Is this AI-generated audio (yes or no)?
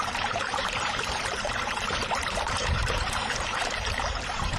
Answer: yes